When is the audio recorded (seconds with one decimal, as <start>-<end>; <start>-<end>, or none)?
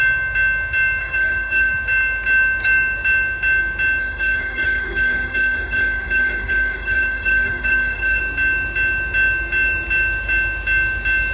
0.0-1.0; 1.7-4.0; 8.2-11.3